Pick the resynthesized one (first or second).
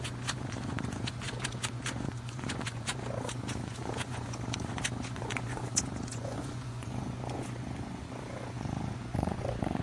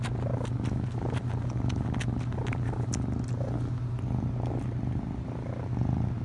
first